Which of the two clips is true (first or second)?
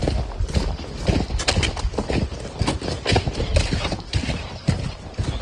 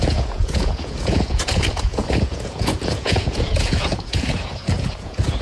first